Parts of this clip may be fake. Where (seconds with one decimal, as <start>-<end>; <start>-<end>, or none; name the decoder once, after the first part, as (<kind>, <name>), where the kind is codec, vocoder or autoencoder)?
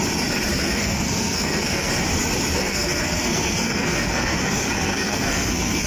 0.6-1.9 (codec, SNAC); 2.6-5.9